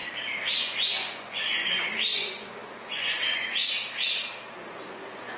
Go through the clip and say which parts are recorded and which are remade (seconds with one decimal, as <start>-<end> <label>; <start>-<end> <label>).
0.0-0.6 recorded; 0.6-3.6 remade; 3.6-4.9 recorded; 4.9-5.4 remade